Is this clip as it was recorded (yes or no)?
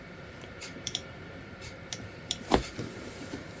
no